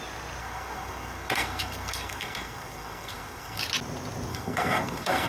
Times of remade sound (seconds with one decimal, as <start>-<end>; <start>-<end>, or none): 0.4-3.6; 4.3-5.3